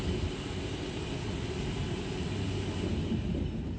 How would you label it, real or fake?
real